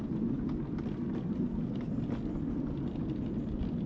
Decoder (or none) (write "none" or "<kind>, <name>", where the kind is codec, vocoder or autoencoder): none